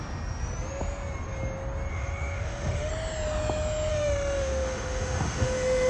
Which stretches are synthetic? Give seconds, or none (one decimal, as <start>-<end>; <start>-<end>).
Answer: 1.9-2.9; 3.9-5.9